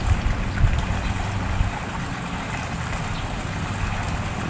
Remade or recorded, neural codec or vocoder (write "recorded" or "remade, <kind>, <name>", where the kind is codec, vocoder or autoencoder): recorded